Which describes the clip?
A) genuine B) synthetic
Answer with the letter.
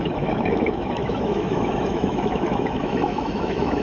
B